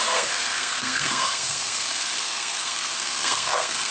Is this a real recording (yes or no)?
no